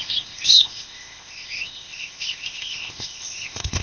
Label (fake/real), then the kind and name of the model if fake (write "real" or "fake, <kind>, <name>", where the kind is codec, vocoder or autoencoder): fake, codec, ZipCodec